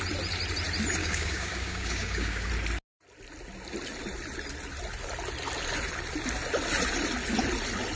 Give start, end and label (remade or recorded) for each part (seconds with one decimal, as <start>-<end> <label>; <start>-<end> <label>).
0.0-1.0 recorded; 1.0-2.5 remade; 2.5-8.0 recorded